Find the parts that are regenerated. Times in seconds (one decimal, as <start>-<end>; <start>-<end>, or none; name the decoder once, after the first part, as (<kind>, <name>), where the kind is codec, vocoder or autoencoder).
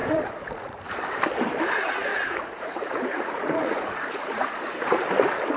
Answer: 0.0-0.9 (vocoder, Vocos); 2.1-5.0